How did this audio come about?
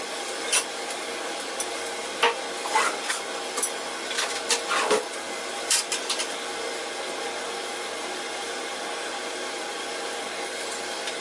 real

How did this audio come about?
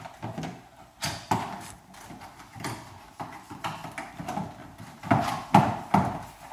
real